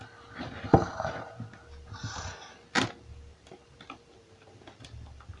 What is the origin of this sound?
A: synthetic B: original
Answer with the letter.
B